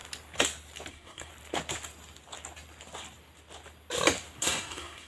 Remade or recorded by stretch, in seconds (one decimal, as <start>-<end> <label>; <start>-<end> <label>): 0.0-0.9 recorded; 0.9-1.3 remade; 1.3-4.4 recorded; 4.4-5.1 remade